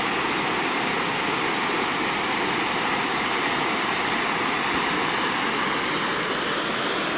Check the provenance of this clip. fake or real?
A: real